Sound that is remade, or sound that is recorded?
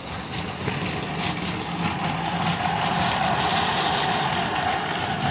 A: recorded